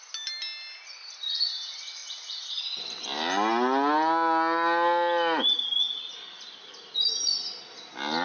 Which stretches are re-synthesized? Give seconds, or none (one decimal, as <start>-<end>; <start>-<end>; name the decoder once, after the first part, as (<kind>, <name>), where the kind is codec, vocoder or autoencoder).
none